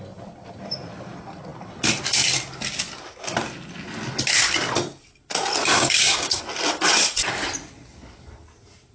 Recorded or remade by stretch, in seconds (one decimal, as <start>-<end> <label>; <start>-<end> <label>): 0.0-5.7 recorded; 5.7-6.4 remade; 6.4-8.9 recorded